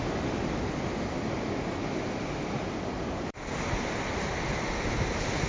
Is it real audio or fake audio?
real